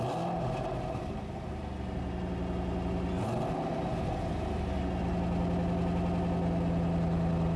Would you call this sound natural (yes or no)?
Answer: yes